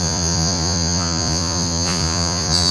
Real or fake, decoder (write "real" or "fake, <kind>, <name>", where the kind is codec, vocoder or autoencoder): fake, vocoder, Vocos